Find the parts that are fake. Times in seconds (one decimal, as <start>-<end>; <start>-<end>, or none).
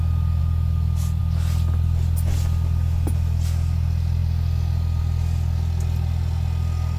none